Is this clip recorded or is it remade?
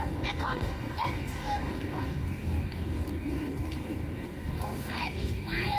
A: remade